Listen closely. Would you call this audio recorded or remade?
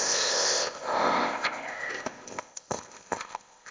remade